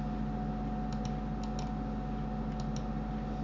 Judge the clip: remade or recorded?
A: recorded